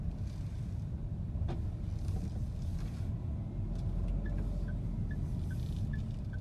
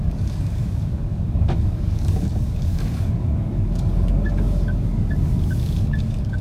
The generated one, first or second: second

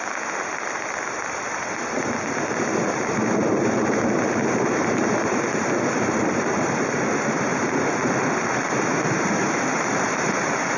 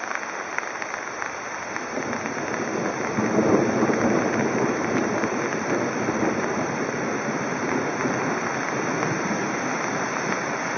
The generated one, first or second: first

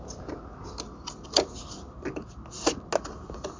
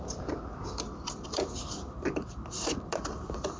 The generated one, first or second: second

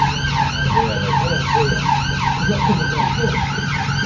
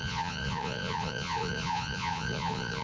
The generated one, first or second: second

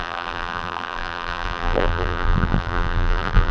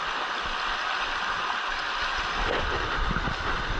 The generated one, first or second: first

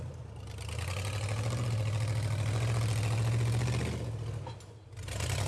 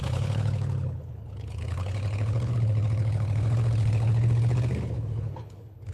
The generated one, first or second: second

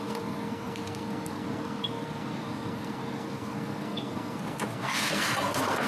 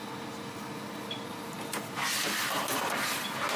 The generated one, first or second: first